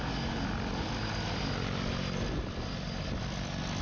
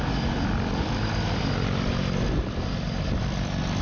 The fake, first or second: second